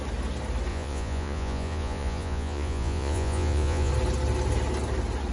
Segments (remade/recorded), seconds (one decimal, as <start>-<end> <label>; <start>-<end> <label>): 0.0-0.7 recorded; 0.7-3.9 remade; 3.9-5.3 recorded